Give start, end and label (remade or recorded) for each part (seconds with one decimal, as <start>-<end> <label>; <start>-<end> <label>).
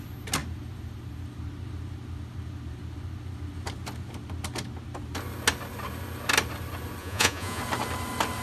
0.0-7.0 recorded; 7.0-7.6 remade; 7.6-8.4 recorded